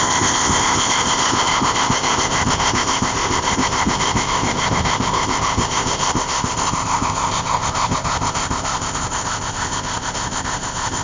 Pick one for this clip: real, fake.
fake